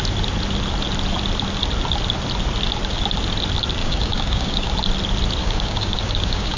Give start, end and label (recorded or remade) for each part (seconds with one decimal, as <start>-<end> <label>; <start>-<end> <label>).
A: 0.0-3.8 recorded; 3.8-4.7 remade; 4.7-5.4 recorded; 5.4-6.6 remade